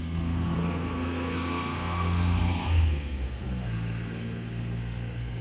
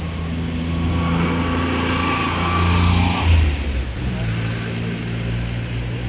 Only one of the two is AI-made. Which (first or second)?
first